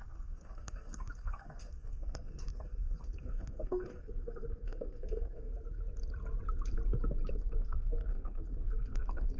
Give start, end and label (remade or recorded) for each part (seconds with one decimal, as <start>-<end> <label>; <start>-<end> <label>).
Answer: 0.0-5.5 remade; 5.5-7.3 recorded; 7.3-9.4 remade